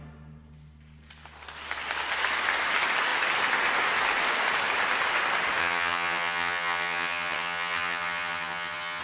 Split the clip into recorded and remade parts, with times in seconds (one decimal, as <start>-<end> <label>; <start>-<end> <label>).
0.0-5.6 recorded; 5.6-9.0 remade